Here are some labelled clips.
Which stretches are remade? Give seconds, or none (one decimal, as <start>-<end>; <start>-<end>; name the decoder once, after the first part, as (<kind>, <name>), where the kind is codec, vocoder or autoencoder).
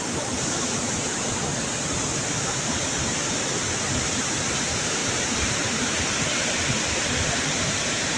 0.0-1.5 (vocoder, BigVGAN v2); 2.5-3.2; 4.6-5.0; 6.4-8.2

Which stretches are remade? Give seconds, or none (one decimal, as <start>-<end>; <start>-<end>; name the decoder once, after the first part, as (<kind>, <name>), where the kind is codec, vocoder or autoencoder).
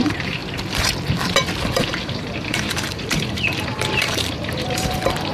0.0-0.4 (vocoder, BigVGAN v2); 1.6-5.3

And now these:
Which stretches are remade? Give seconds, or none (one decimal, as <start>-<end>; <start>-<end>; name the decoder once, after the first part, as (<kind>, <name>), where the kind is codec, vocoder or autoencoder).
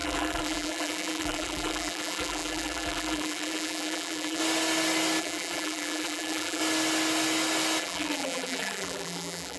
0.0-4.4 (vocoder, BigVGAN v2); 5.2-6.6; 7.8-9.6